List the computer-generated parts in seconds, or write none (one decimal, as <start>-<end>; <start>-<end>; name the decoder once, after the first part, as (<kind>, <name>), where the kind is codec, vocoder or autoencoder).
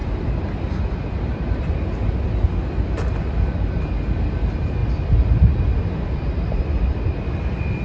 none